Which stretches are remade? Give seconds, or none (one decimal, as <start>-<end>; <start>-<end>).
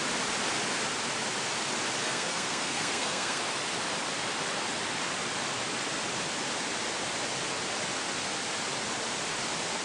2.0-3.4